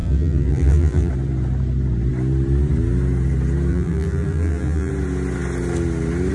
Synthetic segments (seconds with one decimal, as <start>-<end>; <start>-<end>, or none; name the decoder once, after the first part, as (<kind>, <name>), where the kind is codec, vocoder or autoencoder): 0.0-1.1 (vocoder, BigVGAN v2); 3.7-4.9